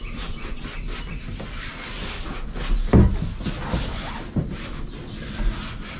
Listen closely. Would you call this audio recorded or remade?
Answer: recorded